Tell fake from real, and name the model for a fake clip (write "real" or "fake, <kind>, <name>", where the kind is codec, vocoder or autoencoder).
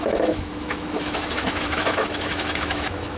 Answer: fake, autoencoder, DAC-VAE